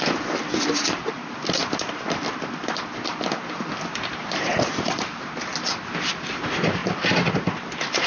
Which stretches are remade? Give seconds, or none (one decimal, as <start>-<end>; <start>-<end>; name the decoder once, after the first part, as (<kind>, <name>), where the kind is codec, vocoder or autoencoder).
0.0-4.5 (vocoder, BigVGAN v2); 5.9-8.1